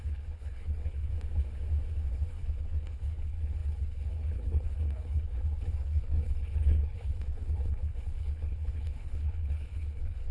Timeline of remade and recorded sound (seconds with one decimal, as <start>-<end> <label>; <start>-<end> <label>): 0.0-1.1 remade; 1.1-2.1 recorded; 2.1-10.3 remade